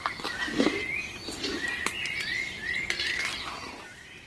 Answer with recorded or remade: remade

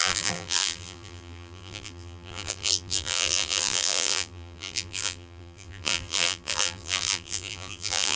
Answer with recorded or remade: remade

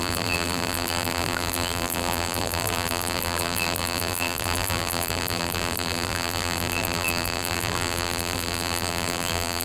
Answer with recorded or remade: remade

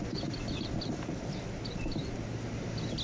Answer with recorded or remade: recorded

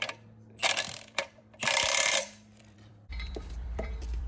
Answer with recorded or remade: remade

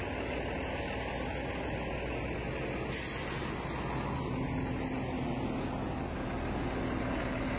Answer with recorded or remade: recorded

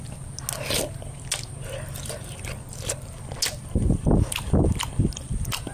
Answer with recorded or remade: recorded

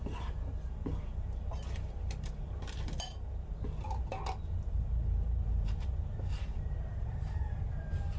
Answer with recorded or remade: remade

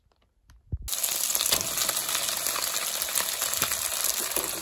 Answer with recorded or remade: recorded